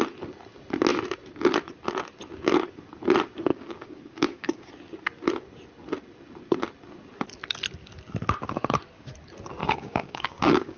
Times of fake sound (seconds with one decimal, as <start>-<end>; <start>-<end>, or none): 3.5-4.7; 9.6-10.8